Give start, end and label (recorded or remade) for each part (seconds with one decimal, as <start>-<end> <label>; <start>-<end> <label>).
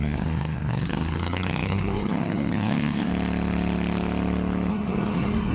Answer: 0.0-3.1 remade; 3.1-4.7 recorded; 4.7-5.5 remade